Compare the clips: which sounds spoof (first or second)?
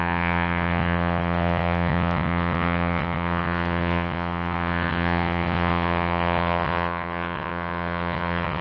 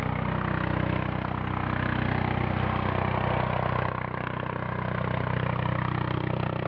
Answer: first